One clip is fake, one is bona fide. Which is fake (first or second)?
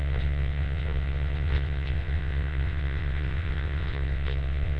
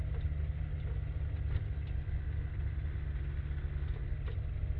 first